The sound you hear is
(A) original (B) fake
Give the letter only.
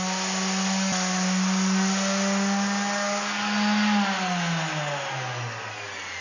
A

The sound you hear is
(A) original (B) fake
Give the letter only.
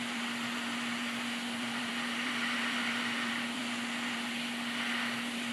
B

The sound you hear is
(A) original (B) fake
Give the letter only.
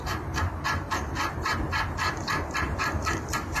B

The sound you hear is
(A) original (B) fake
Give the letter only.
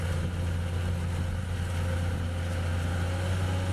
A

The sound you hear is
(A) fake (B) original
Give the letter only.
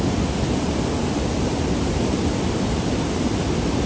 B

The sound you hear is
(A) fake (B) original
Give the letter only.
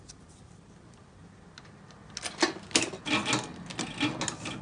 B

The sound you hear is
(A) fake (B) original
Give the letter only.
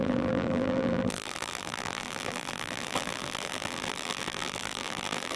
A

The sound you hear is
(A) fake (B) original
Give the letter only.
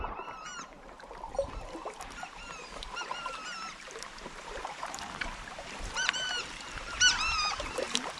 A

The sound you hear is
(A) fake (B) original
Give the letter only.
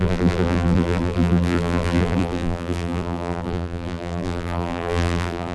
A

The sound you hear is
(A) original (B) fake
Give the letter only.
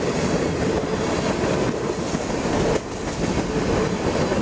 A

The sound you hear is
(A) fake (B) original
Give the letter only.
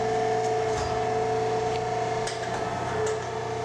B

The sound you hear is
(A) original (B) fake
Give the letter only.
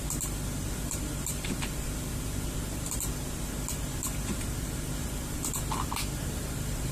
B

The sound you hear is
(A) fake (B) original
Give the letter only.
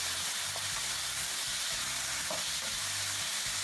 B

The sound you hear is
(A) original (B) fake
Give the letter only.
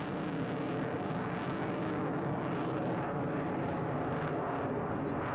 A